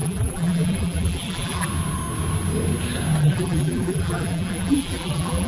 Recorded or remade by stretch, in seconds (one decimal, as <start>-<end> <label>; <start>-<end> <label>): 0.0-1.7 remade; 1.7-3.2 recorded; 3.2-5.5 remade